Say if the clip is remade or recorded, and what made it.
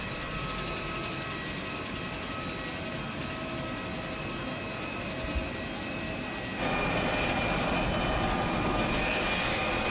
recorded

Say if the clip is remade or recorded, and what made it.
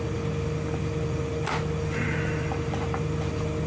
recorded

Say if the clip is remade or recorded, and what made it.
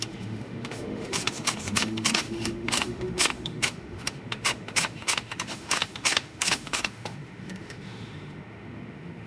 remade, autoencoder, DAC-VAE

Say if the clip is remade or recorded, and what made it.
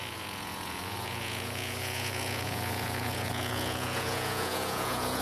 remade, vocoder, Vocos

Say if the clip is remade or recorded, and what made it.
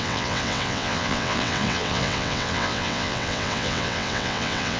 remade, vocoder, WaveNeXt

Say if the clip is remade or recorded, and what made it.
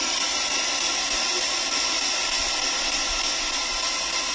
recorded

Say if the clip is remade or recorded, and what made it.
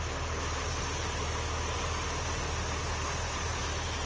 recorded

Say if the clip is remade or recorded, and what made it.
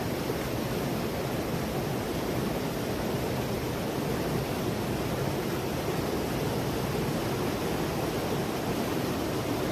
recorded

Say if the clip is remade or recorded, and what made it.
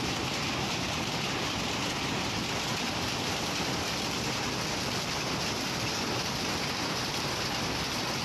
remade, vocoder, BigVGAN v2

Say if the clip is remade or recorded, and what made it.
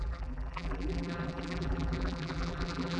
remade, vocoder, BigVGAN v2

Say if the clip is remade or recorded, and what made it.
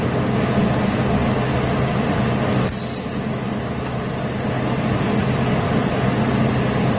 recorded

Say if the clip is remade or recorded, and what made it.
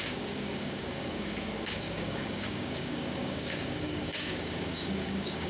remade, codec, DAC